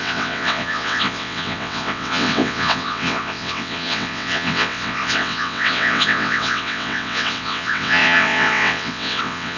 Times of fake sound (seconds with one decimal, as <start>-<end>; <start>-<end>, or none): 0.0-9.6